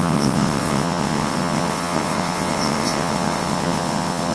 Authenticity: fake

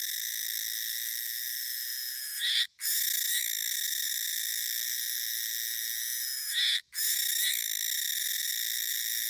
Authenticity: fake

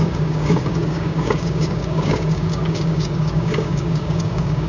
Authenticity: fake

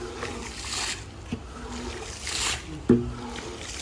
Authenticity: real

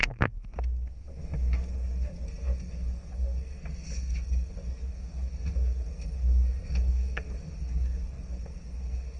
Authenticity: fake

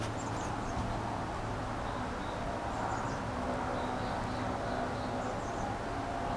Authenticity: real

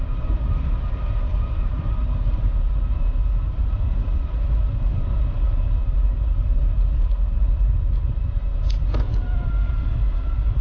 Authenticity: fake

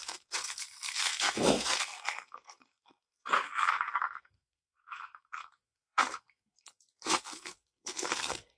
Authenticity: fake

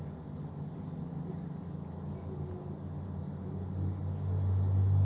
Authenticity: real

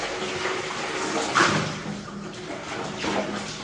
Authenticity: real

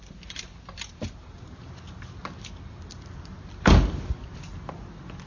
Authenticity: real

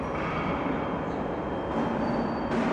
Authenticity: real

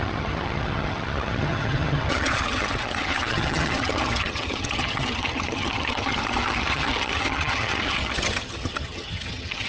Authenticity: fake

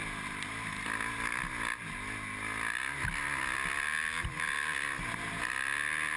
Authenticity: real